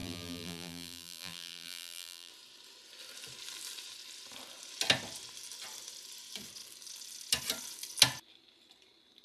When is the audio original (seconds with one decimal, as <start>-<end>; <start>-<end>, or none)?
2.3-9.2